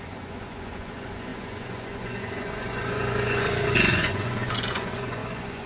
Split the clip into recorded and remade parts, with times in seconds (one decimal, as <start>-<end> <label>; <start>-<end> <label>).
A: 0.0-5.7 remade